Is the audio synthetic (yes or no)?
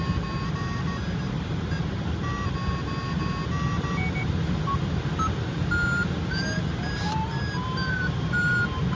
no